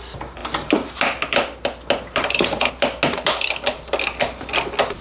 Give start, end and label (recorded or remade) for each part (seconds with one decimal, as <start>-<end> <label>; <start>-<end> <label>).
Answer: 0.0-5.0 recorded